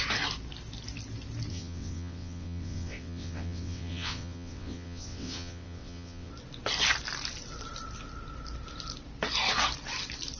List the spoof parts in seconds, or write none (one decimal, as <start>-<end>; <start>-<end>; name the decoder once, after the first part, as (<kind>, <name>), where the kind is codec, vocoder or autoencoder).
1.5-6.3 (vocoder, WaveNeXt)